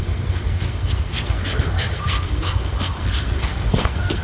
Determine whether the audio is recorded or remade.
remade